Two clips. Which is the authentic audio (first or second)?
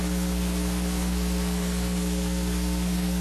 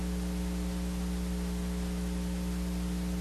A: second